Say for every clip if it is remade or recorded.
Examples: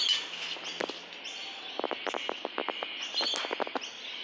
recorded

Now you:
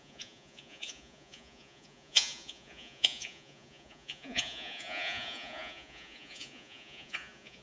remade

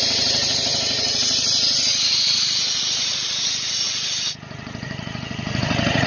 remade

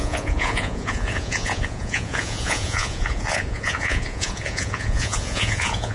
remade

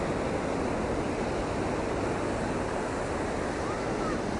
recorded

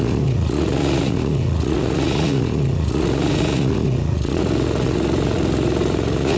remade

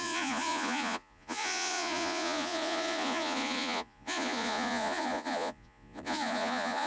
remade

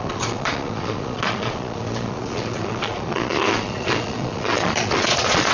remade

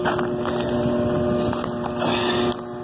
recorded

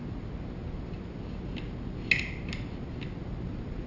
recorded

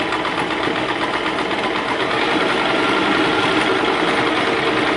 recorded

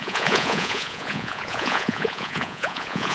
remade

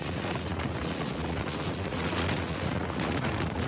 remade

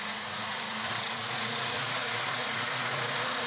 remade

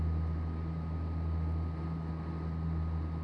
recorded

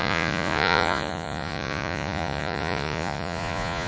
remade